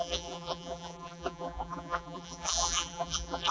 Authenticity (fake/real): fake